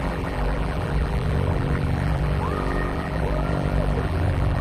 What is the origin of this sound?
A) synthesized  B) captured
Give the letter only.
A